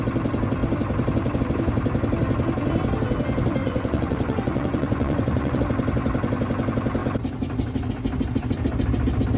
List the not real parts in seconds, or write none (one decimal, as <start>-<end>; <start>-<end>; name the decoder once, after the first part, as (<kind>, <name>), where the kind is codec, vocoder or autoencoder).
3.6-5.6 (vocoder, Vocos)